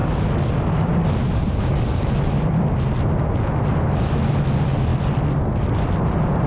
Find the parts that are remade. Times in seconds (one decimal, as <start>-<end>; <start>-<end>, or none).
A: none